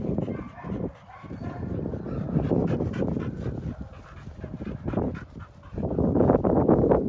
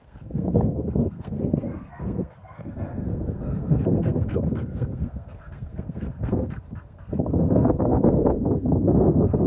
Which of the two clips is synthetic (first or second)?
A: second